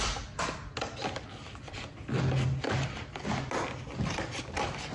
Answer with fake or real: real